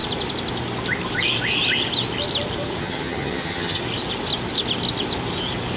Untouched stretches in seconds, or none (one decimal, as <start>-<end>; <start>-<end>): 0.0-2.8; 3.8-5.8